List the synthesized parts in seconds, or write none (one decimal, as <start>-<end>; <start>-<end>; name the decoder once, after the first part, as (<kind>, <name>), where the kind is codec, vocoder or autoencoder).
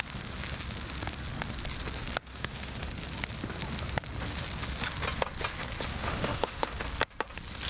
2.3-2.9 (autoencoder, DAC-VAE); 5.9-6.8